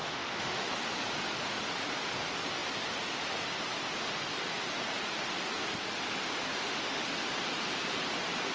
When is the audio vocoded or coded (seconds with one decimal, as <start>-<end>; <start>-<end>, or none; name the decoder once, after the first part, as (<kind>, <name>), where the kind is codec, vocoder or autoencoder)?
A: 0.0-0.7 (autoencoder, DAC-VAE); 6.5-7.1